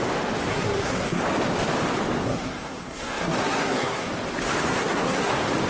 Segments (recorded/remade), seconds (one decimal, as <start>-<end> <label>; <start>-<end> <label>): 0.0-0.5 recorded; 0.5-1.2 remade; 1.2-2.2 recorded; 2.2-4.1 remade; 4.1-4.7 recorded; 4.7-5.3 remade; 5.3-5.7 recorded